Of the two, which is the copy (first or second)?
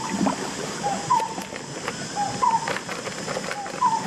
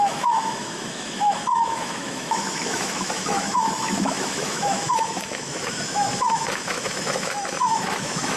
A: second